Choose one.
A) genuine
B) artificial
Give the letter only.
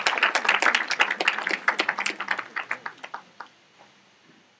A